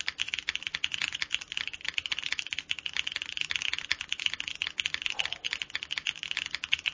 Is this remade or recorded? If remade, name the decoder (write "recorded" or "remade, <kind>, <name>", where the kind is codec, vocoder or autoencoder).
recorded